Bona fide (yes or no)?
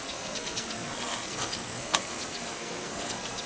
no